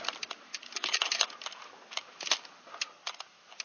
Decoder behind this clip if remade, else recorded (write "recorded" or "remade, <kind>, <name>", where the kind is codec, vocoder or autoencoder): recorded